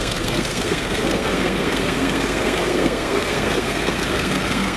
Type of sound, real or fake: fake